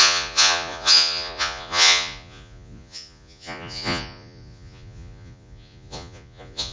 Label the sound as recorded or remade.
remade